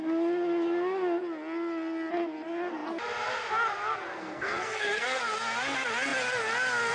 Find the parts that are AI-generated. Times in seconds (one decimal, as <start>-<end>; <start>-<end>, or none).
4.1-5.2